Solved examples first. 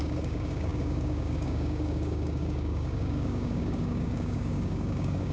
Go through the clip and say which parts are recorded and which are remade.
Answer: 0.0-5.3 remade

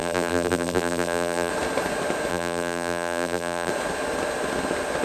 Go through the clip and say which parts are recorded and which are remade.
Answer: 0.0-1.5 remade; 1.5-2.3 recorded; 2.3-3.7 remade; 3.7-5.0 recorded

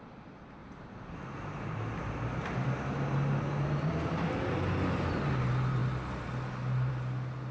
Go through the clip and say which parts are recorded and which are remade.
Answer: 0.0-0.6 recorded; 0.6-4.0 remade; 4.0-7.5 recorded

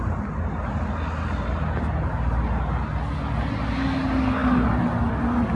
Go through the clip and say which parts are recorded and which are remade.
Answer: 0.0-5.5 recorded